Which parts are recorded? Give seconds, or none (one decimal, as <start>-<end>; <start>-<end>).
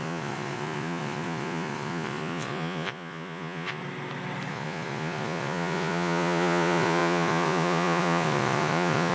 3.8-4.5